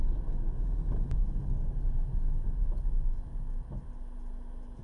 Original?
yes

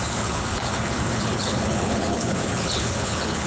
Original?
no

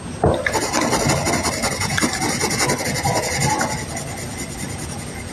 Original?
yes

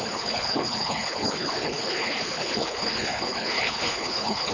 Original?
no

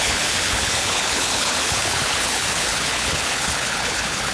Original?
no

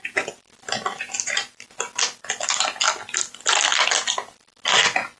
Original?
yes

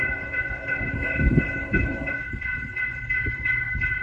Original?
no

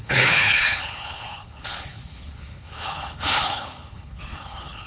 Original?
no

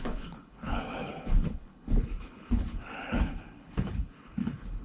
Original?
no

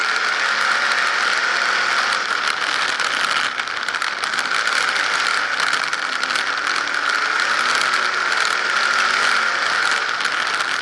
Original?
yes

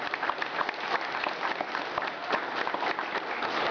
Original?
yes